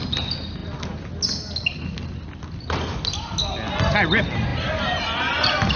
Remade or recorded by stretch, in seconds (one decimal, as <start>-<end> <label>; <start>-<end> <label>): 0.0-5.8 recorded